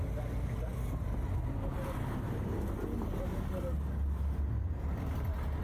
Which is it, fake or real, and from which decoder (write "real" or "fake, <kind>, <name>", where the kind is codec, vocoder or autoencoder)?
real